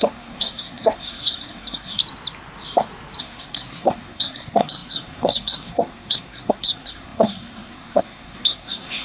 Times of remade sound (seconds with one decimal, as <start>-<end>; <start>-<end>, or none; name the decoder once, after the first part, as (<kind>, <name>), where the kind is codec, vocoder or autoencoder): 0.0-2.0 (codec, SNAC); 3.2-9.0